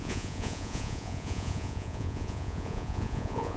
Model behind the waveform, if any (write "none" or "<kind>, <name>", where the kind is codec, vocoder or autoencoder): vocoder, Vocos